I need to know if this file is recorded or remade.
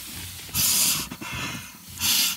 recorded